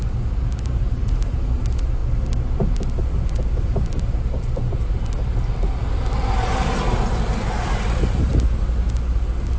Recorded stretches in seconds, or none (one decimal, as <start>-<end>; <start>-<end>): 0.0-9.6